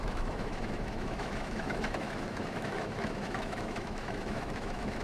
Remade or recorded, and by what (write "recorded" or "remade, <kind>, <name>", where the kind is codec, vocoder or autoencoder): remade, autoencoder, DAC-VAE